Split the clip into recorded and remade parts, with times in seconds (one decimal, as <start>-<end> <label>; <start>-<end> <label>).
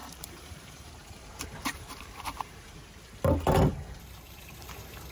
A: 0.0-2.6 remade; 2.6-3.7 recorded; 3.7-4.4 remade; 4.4-5.1 recorded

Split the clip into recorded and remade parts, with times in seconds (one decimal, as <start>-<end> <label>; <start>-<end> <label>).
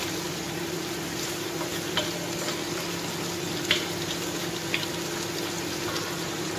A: 0.0-1.7 remade; 1.7-5.7 recorded; 5.7-6.6 remade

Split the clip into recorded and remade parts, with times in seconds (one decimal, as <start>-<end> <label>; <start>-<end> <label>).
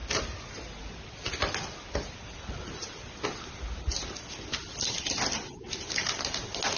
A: 0.0-4.1 remade; 4.1-6.8 recorded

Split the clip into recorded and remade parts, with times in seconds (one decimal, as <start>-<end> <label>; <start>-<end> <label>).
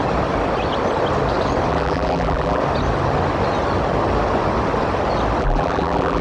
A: 0.0-1.7 recorded; 1.7-2.6 remade; 2.6-5.4 recorded; 5.4-6.2 remade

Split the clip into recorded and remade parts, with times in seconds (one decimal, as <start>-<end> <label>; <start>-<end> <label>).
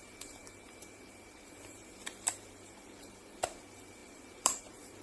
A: 0.0-5.0 remade